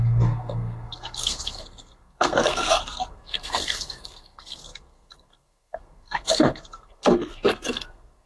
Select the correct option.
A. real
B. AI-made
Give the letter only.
B